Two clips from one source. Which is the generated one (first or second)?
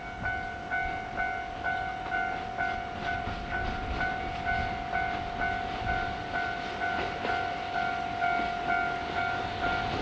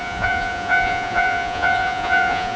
second